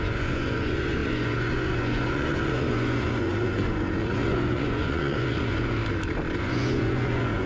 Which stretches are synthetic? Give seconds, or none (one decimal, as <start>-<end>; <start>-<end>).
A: 0.0-5.8; 6.4-7.5